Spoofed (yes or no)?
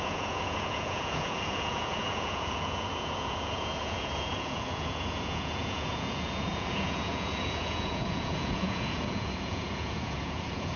yes